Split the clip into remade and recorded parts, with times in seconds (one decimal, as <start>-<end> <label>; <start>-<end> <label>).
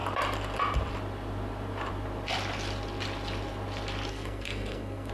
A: 0.0-4.1 recorded; 4.1-5.1 remade